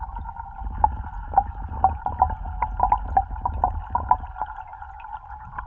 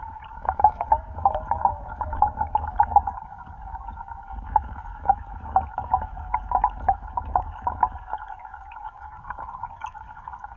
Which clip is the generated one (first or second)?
second